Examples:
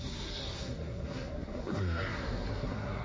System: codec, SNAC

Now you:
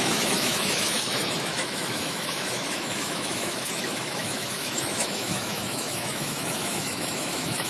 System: autoencoder, DAC-VAE